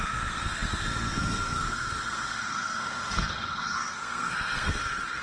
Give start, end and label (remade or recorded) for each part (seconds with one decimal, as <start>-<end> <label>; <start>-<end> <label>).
0.0-5.2 remade